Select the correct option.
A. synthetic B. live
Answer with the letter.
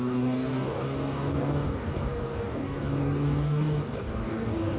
A